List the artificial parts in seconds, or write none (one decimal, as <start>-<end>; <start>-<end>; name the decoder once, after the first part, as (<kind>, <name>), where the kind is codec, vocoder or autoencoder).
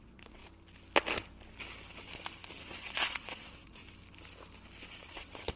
0.0-0.4 (vocoder, WaveNeXt); 2.6-3.8; 4.9-5.6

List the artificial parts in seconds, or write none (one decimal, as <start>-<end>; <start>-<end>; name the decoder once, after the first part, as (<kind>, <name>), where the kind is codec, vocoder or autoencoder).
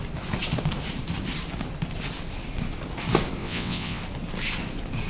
3.4-4.0 (vocoder, WaveNeXt)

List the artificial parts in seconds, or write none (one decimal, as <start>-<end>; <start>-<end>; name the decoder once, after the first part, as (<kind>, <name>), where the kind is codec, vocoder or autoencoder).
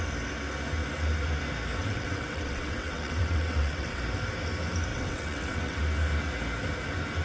1.8-4.0 (vocoder, WaveNeXt); 4.9-5.8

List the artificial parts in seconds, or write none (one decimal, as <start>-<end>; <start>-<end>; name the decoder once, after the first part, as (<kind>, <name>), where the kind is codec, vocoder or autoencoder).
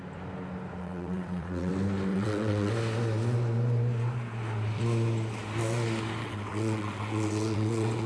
0.8-1.7 (vocoder, WaveNeXt); 2.1-2.7; 6.2-8.1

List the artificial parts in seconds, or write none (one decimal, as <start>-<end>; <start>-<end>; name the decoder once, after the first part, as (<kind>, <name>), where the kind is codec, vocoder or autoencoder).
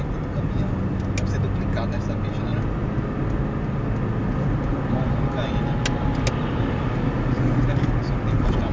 none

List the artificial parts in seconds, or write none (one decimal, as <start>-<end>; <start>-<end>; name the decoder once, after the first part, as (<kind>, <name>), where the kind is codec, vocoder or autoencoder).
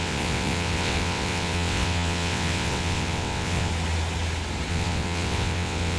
0.0-3.7 (vocoder, WaveNeXt); 4.7-6.0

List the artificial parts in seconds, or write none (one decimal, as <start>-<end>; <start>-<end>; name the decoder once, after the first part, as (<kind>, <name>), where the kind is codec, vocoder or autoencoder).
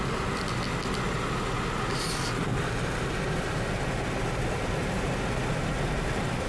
none